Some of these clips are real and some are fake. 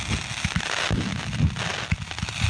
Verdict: real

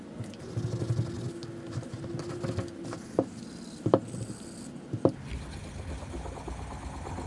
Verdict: real